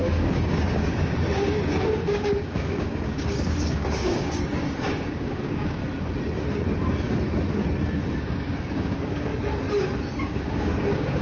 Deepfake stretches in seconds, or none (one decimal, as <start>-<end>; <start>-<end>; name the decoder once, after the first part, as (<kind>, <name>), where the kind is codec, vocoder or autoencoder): 0.0-5.8 (codec, DAC); 8.2-9.3; 10.2-11.2